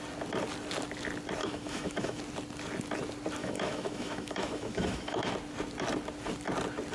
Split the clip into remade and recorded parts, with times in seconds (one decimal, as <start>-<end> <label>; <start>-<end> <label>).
0.0-1.4 recorded; 1.4-2.2 remade; 2.2-3.4 recorded; 3.4-5.3 remade; 5.3-6.9 recorded